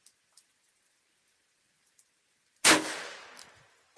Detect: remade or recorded recorded